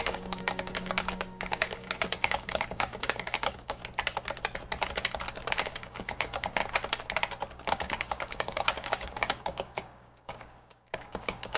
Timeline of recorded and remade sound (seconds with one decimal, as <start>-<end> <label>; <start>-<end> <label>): 0.0-3.8 remade; 3.8-5.5 recorded; 5.5-6.6 remade; 6.6-7.5 recorded; 7.5-11.6 remade